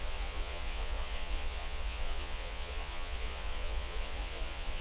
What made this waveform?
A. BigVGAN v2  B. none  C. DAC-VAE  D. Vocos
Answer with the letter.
D